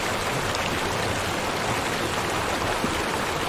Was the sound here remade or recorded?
recorded